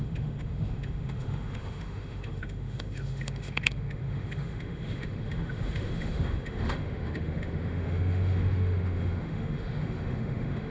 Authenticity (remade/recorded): remade